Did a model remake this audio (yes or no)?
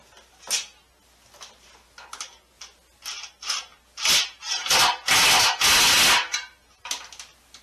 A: no